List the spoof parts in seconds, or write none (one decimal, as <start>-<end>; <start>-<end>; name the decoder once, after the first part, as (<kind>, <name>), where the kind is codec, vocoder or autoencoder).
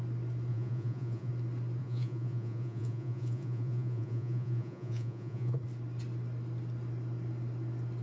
0.5-1.3 (vocoder, Vocos); 1.8-5.6